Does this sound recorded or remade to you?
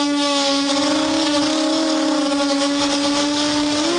remade